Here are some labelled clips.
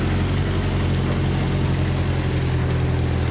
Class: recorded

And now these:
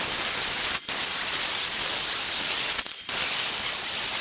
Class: recorded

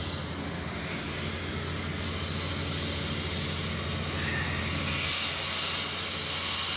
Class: recorded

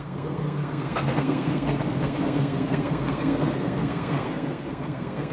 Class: remade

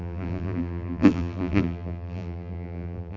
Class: remade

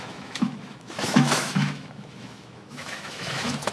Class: remade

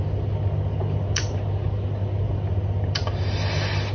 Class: recorded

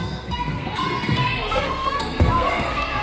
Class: remade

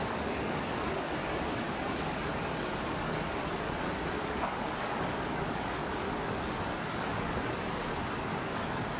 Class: remade